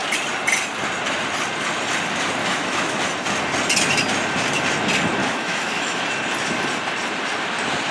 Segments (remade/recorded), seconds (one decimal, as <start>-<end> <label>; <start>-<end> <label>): 0.0-2.4 recorded; 2.4-3.0 remade; 3.0-5.2 recorded; 5.2-6.0 remade; 6.0-7.9 recorded